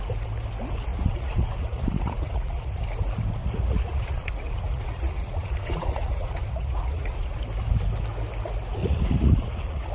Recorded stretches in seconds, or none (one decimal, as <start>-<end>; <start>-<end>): 0.0-0.9; 2.8-3.4; 7.4-8.8

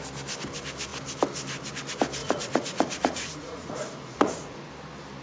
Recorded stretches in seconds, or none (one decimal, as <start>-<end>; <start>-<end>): 0.0-2.2; 4.7-5.2

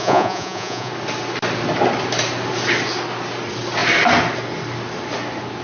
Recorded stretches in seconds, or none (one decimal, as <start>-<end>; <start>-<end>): 0.9-5.6

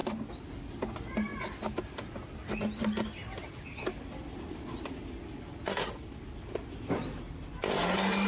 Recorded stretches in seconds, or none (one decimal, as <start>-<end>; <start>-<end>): 0.0-8.3

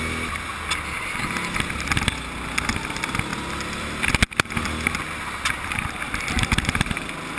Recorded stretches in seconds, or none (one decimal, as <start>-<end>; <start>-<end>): 0.0-7.4

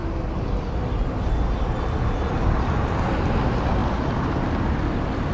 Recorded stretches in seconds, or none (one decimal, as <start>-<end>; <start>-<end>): 0.0-5.3

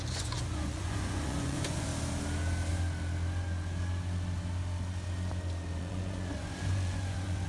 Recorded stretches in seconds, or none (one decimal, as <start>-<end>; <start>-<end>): 1.9-5.8

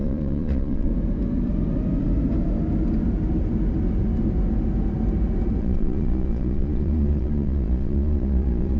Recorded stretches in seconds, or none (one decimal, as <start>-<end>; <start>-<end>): 0.9-5.6